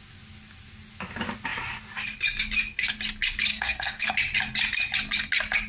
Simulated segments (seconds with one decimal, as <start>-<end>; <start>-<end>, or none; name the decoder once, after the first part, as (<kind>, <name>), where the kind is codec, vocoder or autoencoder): 3.5-4.1 (codec, SNAC)